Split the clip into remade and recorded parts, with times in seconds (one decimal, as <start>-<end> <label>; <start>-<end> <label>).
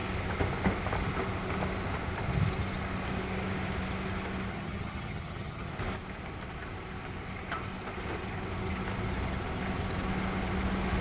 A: 0.0-4.5 recorded; 4.5-5.7 remade; 5.7-11.0 recorded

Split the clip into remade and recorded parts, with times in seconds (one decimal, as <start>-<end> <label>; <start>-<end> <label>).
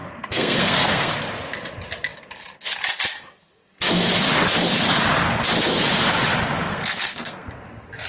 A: 0.0-1.1 remade; 1.1-6.7 recorded; 6.7-7.5 remade; 7.5-8.1 recorded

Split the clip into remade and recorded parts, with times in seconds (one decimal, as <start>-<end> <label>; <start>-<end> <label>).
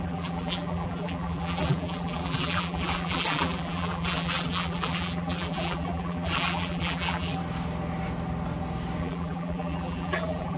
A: 0.0-7.4 remade; 7.4-9.0 recorded; 9.0-10.6 remade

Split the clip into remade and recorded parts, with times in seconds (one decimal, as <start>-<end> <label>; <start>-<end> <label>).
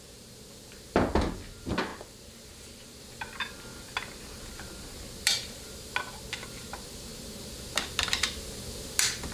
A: 0.0-1.9 recorded; 1.9-3.0 remade; 3.0-9.3 recorded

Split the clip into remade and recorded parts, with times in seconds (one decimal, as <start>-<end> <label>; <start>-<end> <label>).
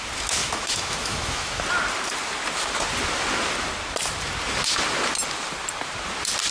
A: 0.0-0.4 recorded; 0.4-1.6 remade; 1.6-6.5 recorded